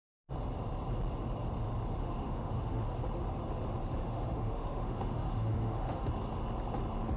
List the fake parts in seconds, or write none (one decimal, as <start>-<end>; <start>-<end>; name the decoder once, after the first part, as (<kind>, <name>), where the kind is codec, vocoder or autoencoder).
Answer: 2.0-2.8 (autoencoder, DAC-VAE); 4.0-6.1